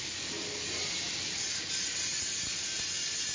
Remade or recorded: recorded